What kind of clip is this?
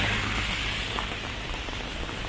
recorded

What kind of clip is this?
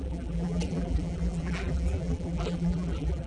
remade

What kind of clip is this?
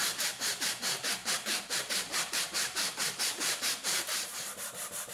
remade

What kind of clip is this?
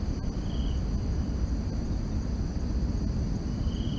recorded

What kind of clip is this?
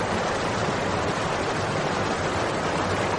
recorded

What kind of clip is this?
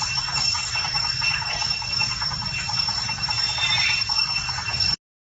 recorded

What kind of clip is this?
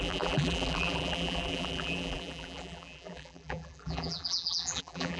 remade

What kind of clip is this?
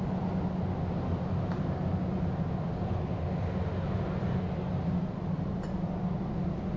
recorded